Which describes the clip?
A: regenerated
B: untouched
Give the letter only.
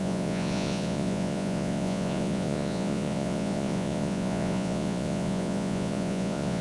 A